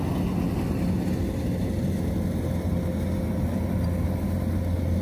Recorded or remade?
recorded